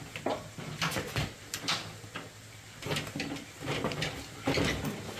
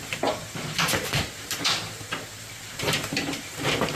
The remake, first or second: second